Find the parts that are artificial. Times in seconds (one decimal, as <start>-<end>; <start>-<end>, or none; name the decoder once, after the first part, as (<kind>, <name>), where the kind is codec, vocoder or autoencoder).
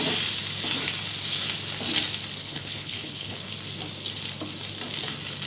2.4-3.5 (codec, HILCodec)